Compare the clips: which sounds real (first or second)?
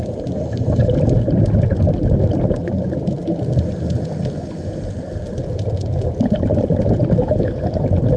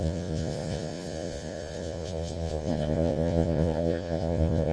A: first